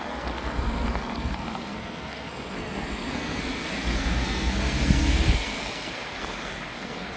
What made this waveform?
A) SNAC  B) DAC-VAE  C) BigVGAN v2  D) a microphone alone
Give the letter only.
A